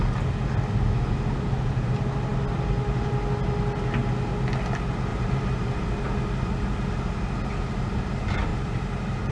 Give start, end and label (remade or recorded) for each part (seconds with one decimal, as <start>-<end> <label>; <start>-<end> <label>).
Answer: 0.0-5.1 recorded; 5.1-5.9 remade; 5.9-8.5 recorded; 8.5-9.3 remade